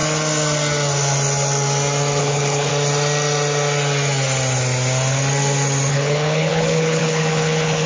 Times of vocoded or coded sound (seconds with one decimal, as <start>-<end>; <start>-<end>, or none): 2.2-2.7; 5.9-7.9